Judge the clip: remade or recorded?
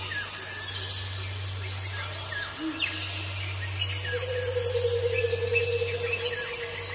recorded